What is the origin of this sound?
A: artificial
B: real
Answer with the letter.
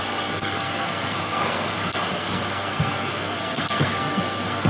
A